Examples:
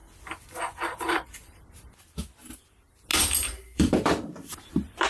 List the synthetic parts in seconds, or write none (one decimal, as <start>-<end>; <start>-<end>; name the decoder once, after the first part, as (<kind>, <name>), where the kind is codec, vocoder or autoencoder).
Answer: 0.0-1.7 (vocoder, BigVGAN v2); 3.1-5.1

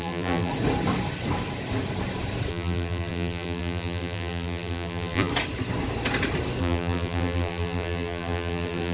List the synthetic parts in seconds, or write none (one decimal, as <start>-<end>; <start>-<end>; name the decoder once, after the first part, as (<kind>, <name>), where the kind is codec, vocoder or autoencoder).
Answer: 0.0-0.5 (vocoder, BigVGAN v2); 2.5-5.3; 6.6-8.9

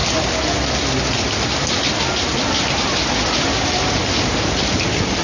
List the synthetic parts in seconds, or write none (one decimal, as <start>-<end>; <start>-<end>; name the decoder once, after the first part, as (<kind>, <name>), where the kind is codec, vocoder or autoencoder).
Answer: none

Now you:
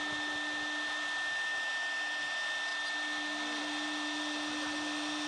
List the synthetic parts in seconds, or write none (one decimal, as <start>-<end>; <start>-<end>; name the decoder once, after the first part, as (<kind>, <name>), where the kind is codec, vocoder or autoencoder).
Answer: none

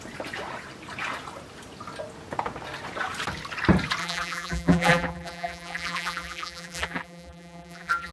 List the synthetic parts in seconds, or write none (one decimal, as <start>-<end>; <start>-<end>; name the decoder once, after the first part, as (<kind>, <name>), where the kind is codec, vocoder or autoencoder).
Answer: 4.0-8.1 (vocoder, BigVGAN v2)

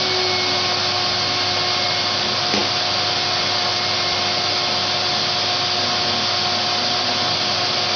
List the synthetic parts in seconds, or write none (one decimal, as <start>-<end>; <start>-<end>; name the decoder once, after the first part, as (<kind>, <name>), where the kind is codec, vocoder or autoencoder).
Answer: none

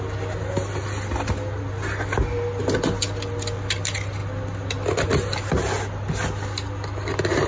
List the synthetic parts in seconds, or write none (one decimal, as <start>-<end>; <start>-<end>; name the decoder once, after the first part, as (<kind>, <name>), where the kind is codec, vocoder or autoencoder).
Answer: none

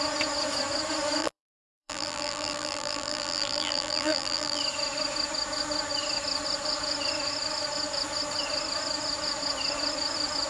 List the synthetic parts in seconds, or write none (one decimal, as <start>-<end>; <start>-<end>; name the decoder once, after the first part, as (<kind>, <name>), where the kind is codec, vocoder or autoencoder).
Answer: 1.2-4.6 (vocoder, BigVGAN v2)